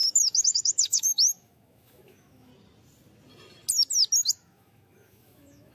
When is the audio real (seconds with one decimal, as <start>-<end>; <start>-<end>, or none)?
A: 2.5-4.3